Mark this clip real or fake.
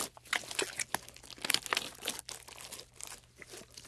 real